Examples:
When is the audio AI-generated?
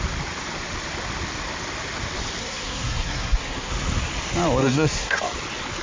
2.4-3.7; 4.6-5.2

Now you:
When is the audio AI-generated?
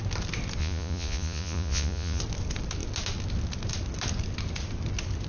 0.6-2.2